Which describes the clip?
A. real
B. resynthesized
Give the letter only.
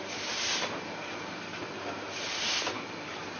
A